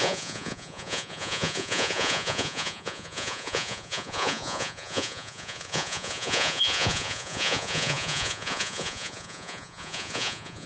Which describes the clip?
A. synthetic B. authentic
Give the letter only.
A